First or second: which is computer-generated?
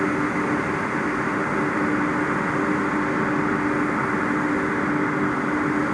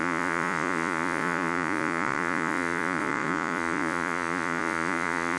second